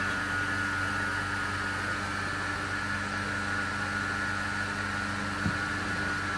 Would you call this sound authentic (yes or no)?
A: yes